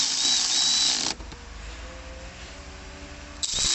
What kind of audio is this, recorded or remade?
recorded